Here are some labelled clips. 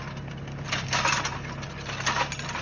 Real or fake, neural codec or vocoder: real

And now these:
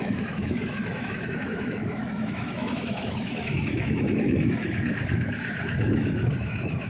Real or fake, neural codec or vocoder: fake, autoencoder, DAC-VAE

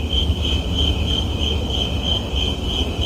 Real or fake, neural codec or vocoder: real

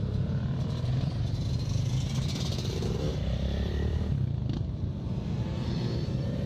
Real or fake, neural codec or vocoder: fake, vocoder, BigVGAN v2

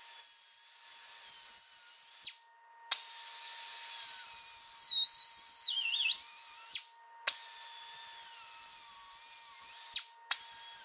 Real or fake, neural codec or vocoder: real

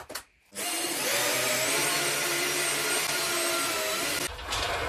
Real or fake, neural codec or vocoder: real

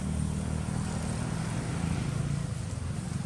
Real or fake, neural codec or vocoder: real